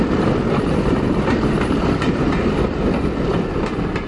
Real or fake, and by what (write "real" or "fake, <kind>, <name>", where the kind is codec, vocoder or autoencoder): fake, vocoder, BigVGAN v2